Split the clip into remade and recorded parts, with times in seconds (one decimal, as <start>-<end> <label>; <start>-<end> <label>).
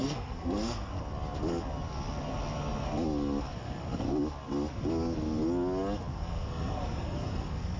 0.0-1.0 remade; 1.0-6.1 recorded; 6.1-7.8 remade